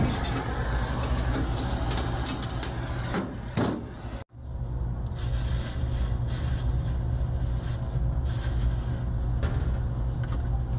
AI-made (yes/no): no